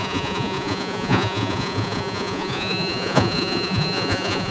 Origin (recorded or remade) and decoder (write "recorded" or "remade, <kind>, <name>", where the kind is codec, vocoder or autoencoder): remade, vocoder, Vocos